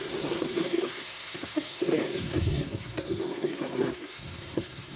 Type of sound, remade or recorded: remade